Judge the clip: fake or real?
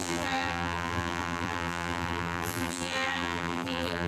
fake